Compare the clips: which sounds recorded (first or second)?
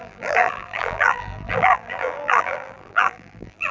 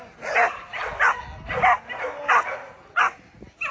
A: second